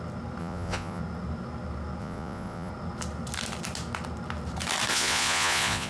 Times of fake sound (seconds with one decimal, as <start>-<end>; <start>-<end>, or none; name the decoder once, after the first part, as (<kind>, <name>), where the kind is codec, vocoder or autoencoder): 0.4-1.0 (vocoder, Vocos); 2.0-2.7; 4.9-5.9